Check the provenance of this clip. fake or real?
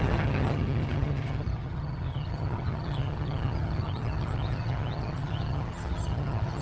fake